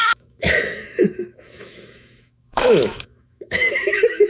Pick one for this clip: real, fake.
fake